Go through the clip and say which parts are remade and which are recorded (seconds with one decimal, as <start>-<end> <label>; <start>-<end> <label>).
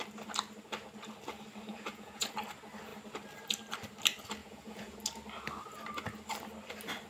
0.0-1.7 recorded; 1.7-2.3 remade; 2.3-4.4 recorded; 4.4-5.0 remade; 5.0-7.1 recorded